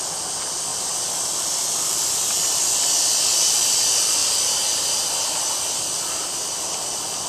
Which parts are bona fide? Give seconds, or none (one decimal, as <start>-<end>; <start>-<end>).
0.0-7.3